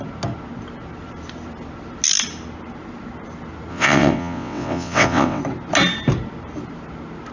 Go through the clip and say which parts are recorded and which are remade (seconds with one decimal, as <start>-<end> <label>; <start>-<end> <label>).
0.0-3.7 recorded; 3.7-5.4 remade; 5.4-7.3 recorded